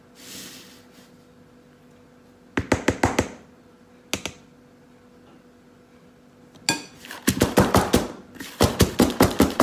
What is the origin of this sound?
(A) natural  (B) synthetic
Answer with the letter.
A